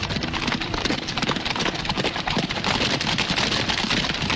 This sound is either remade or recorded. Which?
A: remade